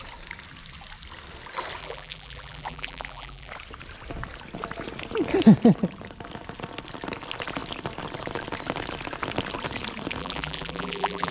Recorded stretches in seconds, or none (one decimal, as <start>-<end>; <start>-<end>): 0.0-1.8; 3.5-10.2